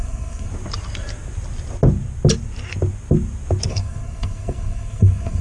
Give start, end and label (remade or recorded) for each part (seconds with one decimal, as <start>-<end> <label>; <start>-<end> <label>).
0.0-0.5 remade; 0.5-3.7 recorded; 3.7-5.4 remade